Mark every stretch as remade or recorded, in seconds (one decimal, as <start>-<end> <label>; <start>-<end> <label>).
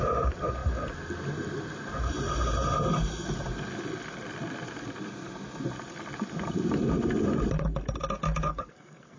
0.0-8.5 recorded; 8.5-9.2 remade